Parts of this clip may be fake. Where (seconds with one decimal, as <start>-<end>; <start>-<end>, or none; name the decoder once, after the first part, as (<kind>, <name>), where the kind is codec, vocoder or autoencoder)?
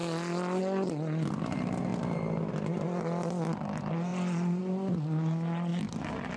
none